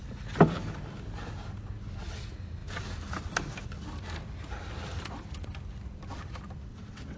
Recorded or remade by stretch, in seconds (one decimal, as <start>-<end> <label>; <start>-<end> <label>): 0.0-6.7 recorded; 6.7-7.2 remade